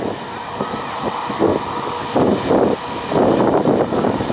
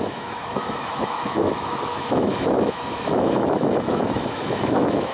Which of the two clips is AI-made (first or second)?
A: second